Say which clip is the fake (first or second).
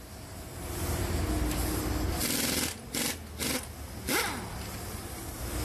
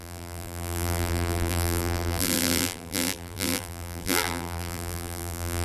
second